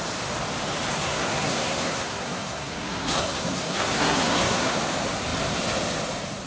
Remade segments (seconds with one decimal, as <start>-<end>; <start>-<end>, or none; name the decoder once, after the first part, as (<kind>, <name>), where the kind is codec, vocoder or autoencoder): 0.9-4.8 (codec, SNAC)